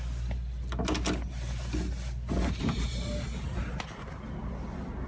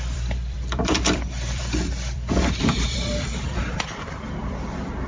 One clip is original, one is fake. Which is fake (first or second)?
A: second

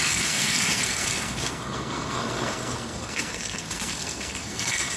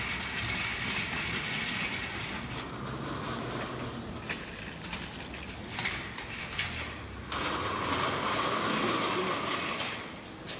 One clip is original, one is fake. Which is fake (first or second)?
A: first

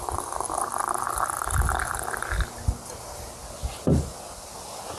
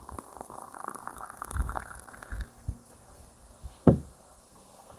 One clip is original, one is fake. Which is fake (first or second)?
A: second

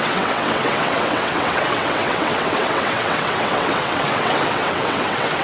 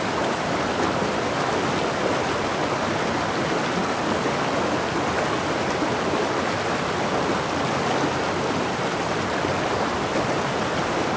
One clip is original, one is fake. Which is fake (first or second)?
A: first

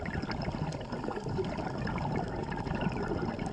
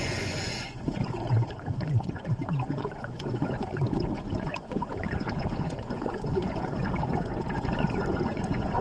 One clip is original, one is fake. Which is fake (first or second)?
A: second